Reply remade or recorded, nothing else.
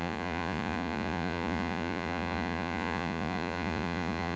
remade